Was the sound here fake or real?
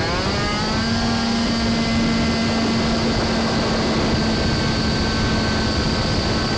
real